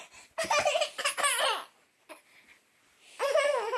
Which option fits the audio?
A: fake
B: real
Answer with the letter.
B